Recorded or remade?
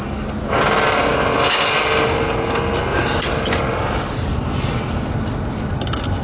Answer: recorded